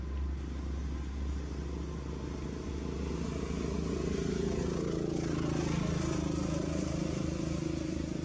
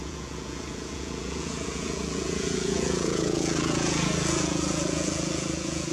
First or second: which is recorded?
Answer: first